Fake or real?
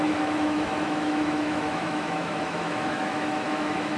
fake